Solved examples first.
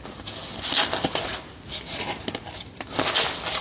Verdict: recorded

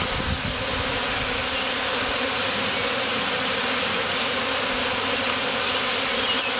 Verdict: recorded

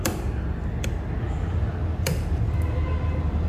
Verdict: remade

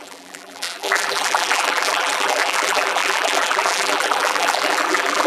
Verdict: remade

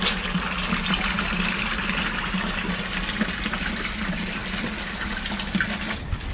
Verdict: recorded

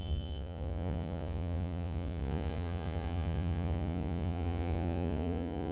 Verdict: remade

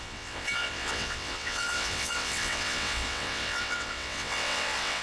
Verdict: remade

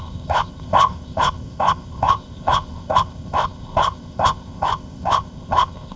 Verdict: remade